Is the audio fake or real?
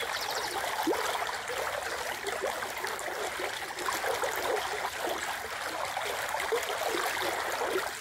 real